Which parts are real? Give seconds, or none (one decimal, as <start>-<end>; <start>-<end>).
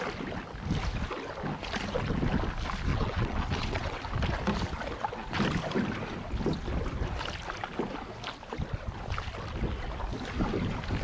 0.0-2.9; 4.0-11.0